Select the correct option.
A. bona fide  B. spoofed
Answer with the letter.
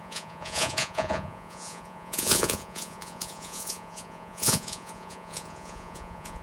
B